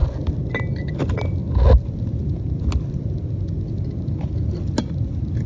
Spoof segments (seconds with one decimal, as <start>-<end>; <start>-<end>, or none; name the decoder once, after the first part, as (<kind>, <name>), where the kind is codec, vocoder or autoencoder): none